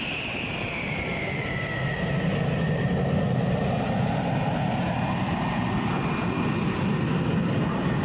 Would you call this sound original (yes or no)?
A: yes